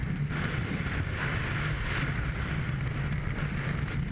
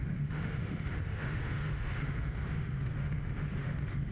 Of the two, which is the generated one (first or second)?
second